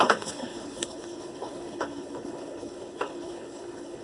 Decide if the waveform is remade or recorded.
remade